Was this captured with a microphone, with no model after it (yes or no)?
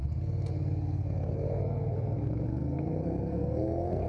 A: no